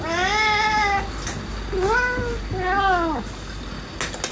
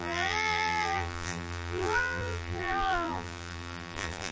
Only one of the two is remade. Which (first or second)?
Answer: second